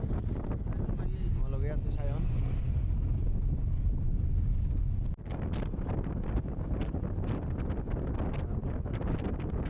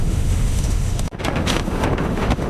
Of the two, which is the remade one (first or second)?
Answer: second